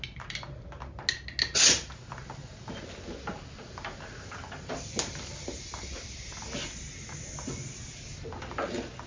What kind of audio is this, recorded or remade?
recorded